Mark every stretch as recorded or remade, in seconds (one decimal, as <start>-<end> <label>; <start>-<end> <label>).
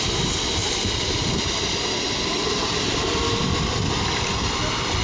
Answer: 0.0-0.6 recorded; 0.6-3.6 remade; 3.6-5.0 recorded